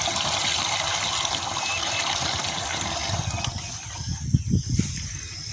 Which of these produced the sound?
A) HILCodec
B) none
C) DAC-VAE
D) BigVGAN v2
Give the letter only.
B